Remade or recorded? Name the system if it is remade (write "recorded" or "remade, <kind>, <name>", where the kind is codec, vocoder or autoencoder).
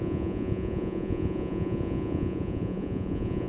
remade, vocoder, Vocos